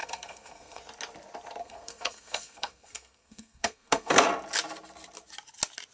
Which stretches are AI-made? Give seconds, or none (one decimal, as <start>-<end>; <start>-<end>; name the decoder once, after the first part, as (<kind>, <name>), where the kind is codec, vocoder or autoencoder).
0.0-0.8 (codec, SNAC); 1.6-4.2

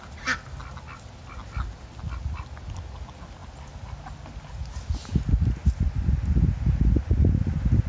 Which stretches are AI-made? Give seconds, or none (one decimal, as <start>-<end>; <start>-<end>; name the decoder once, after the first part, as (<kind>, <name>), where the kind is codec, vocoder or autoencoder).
none

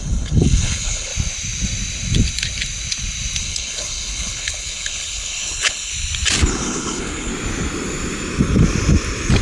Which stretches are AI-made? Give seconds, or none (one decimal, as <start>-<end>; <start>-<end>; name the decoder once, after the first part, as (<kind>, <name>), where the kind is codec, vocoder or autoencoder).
0.0-1.1 (codec, HILCodec); 3.4-5.9; 6.5-7.3

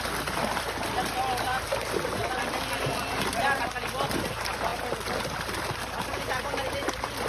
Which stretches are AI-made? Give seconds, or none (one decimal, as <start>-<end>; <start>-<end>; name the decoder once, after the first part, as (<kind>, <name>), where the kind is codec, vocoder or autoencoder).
2.2-3.4 (vocoder, BigVGAN v2)